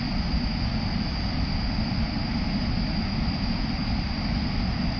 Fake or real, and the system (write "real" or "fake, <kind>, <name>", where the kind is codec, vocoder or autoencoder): real